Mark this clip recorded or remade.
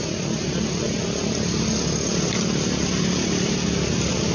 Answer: recorded